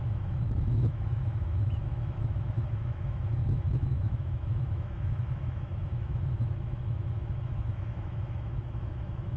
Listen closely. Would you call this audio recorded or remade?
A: remade